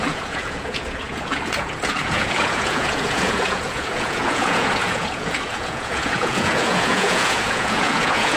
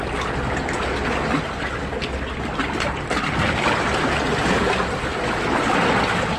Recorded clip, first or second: second